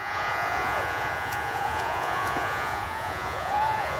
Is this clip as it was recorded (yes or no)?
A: no